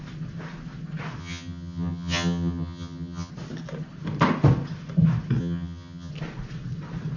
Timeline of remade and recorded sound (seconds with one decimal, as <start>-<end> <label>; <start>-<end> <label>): 0.0-1.2 recorded; 1.2-3.3 remade; 3.3-5.4 recorded; 5.4-6.1 remade; 6.1-7.2 recorded